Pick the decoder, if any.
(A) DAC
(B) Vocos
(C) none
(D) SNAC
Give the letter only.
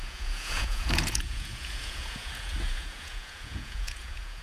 B